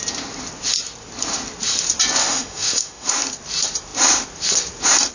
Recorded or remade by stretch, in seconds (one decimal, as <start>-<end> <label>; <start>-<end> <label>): 0.0-2.2 recorded; 2.2-3.1 remade; 3.1-5.1 recorded